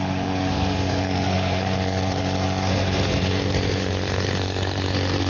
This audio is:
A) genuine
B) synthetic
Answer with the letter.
B